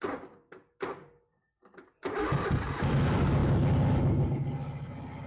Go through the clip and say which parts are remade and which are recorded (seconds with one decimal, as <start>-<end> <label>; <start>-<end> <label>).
0.0-5.3 recorded